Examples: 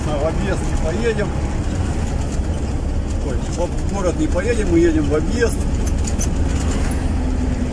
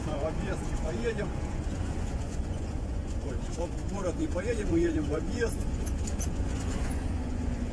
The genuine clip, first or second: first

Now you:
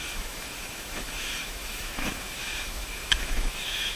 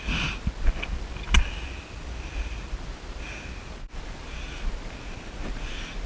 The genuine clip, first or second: second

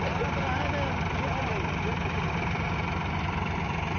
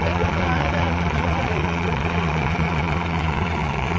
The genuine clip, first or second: first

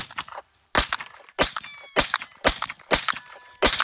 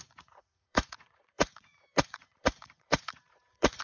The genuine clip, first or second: first